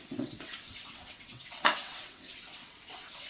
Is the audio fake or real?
fake